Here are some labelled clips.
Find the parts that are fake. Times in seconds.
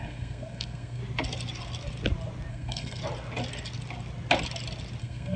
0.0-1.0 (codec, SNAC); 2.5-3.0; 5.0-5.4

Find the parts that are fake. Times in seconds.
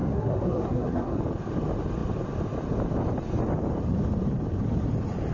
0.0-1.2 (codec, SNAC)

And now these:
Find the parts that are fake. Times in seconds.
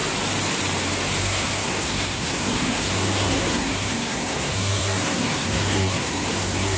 1.2-6.8 (codec, SNAC)